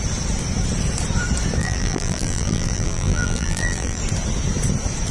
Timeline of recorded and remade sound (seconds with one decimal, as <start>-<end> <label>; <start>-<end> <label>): 0.0-1.6 recorded; 1.6-4.0 remade; 4.0-5.1 recorded